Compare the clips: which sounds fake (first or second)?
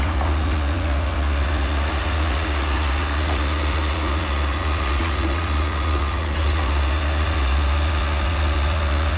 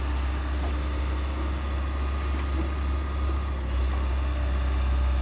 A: first